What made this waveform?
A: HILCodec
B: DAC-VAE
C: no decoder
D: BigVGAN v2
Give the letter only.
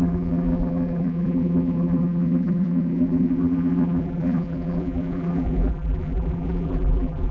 D